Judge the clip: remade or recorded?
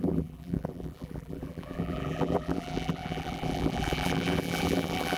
remade